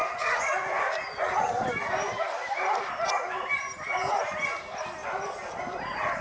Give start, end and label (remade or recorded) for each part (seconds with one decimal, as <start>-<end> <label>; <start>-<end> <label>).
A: 0.0-1.3 remade; 1.3-6.2 recorded